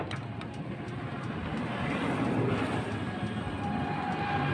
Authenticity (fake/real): real